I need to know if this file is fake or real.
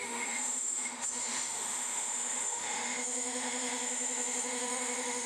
fake